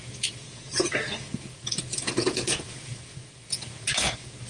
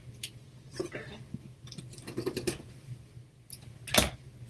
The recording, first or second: second